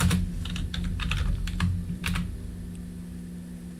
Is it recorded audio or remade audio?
remade